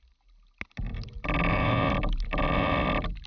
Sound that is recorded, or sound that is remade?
recorded